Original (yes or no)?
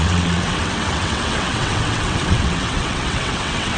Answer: no